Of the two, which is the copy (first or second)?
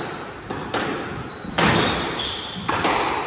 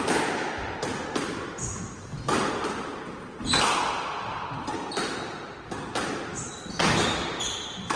first